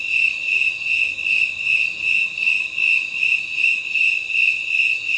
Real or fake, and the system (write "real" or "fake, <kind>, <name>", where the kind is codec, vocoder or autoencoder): real